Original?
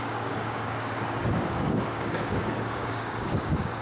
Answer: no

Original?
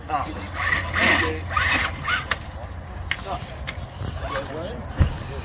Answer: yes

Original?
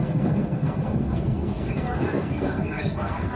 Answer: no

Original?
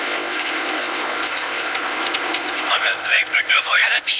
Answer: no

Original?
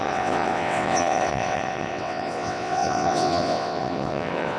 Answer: no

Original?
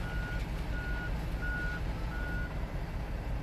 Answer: yes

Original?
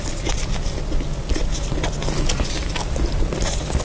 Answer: yes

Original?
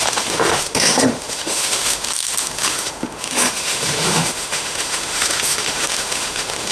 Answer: no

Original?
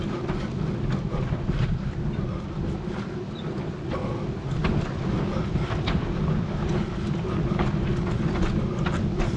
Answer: yes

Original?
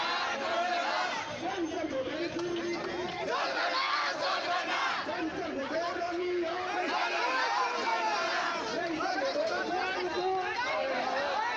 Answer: yes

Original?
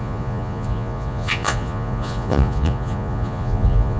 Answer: no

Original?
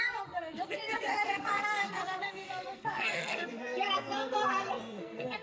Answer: no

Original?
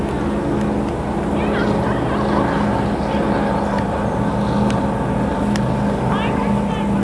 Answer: yes